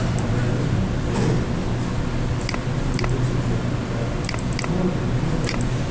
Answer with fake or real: real